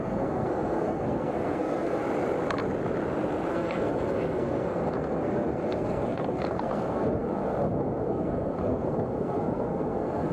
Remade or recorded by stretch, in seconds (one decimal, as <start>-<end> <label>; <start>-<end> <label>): 0.0-2.0 remade; 2.0-3.5 recorded; 3.5-10.3 remade